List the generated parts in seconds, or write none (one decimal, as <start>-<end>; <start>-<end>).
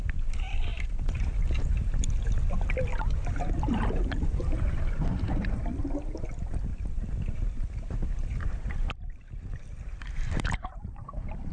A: 0.7-2.1; 2.9-4.6; 6.7-11.5